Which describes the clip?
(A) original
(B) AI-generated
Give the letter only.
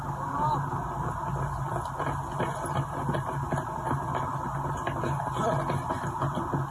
A